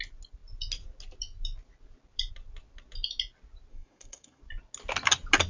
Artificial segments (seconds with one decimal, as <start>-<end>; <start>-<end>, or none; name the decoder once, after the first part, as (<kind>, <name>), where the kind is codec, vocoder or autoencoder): 3.7-4.4 (codec, SNAC)